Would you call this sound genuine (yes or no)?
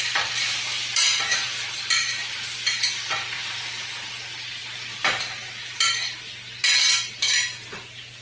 yes